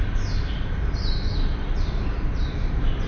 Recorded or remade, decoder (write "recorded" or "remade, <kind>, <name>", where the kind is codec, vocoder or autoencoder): recorded